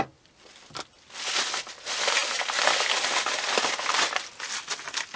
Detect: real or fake real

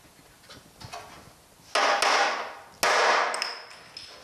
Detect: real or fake real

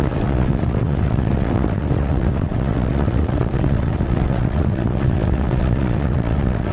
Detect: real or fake fake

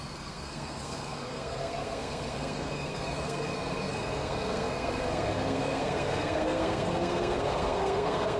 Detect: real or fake fake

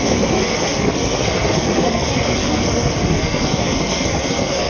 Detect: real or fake fake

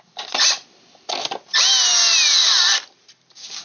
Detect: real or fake real